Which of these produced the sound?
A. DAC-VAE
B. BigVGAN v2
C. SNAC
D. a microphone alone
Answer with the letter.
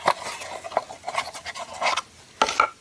D